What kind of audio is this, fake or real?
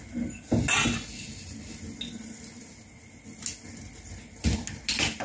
real